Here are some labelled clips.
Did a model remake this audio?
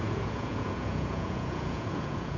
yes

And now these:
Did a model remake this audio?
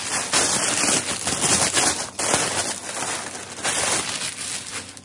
no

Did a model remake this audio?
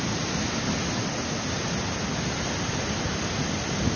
no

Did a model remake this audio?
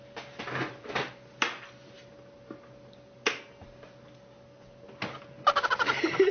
no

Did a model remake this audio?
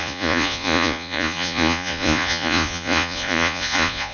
yes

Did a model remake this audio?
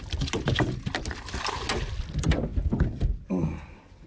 no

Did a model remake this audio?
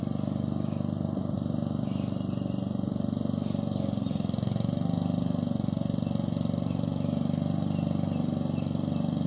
no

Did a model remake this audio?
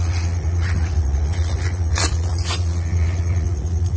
yes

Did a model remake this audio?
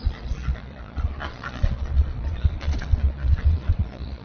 yes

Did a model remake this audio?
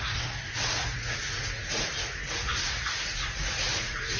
yes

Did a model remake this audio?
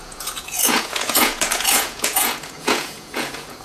yes